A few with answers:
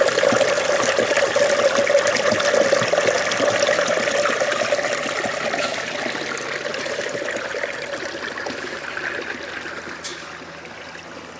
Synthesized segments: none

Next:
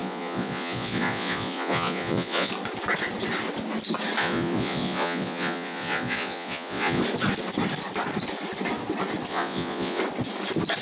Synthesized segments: 0.0-2.5 (vocoder, Vocos); 4.2-7.0; 9.3-10.0

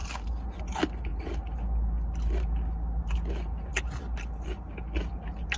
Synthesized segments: none

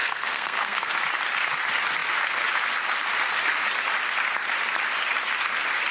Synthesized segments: 0.0-0.9 (codec, SNAC)

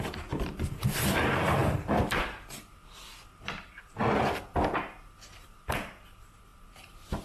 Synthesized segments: none

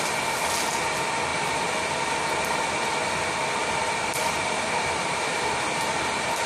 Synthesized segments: 1.3-1.8 (vocoder, BigVGAN v2); 3.6-5.8

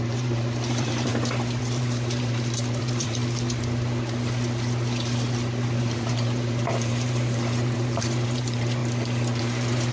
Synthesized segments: 0.0-1.1 (vocoder, BigVGAN v2); 1.6-3.2; 5.8-8.8; 9.4-9.9